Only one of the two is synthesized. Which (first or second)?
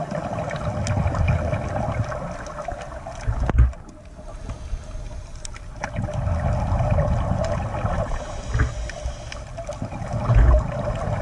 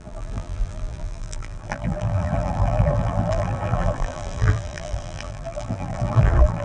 second